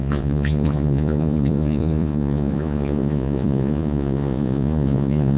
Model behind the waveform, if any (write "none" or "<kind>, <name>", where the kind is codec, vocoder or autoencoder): vocoder, Vocos